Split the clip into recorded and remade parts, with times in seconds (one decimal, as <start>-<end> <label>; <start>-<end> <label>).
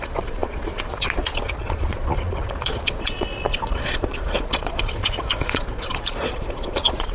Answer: 0.0-7.1 remade